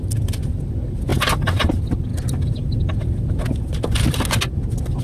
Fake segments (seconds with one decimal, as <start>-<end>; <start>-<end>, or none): 1.1-1.7